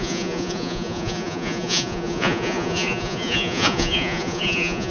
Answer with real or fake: fake